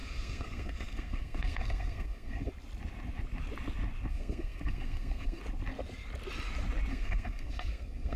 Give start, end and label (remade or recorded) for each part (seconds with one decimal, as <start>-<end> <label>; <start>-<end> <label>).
0.0-2.5 remade; 2.5-4.1 recorded; 4.1-5.4 remade; 5.4-6.9 recorded; 6.9-8.2 remade